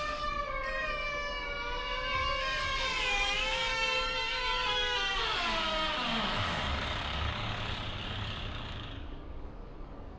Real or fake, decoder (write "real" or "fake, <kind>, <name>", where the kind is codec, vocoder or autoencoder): fake, codec, DAC